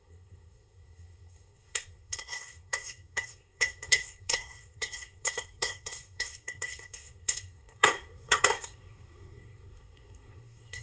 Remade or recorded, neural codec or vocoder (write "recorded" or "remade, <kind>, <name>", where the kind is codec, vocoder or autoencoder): remade, codec, SNAC